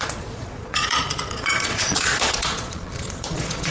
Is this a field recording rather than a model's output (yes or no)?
no